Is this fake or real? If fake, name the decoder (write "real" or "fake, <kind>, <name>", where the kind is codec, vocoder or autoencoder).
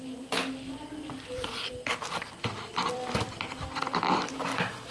fake, vocoder, BigVGAN v2